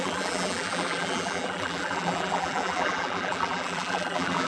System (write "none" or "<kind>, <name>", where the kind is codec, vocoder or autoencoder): vocoder, BigVGAN v2